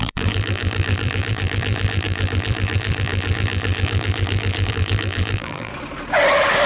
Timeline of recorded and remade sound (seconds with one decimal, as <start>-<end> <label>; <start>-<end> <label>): 0.0-5.7 remade; 5.7-6.7 recorded